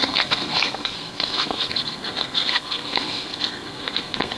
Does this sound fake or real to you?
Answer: fake